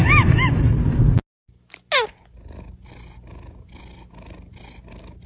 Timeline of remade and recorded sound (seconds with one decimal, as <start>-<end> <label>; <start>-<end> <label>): 0.0-5.3 recorded